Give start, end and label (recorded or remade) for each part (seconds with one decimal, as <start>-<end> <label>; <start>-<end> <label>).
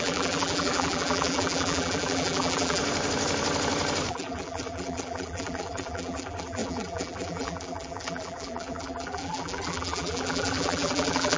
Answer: 0.0-2.8 remade; 2.8-4.1 recorded; 4.1-11.4 remade